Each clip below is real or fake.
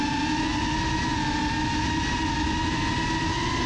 real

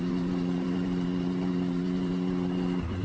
fake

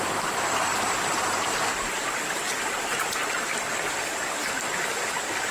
real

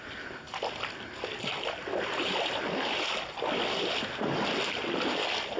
real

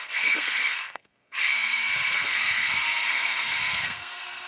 fake